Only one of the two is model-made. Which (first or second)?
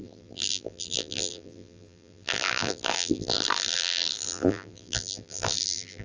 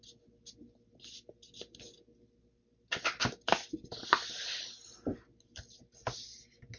first